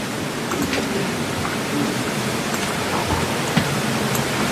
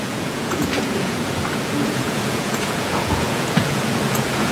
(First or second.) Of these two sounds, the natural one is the first